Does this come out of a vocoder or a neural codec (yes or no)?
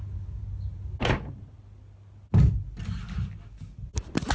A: no